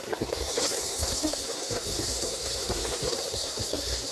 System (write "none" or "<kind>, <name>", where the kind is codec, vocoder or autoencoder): codec, SNAC